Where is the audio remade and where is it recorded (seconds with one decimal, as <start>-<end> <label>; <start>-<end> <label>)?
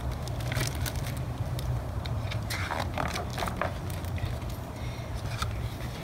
0.0-3.3 remade; 3.3-5.2 recorded; 5.2-6.0 remade